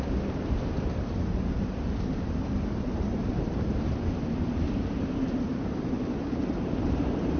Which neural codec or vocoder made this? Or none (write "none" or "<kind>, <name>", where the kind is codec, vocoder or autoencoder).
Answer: vocoder, BigVGAN v2